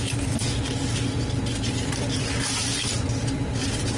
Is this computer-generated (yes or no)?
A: no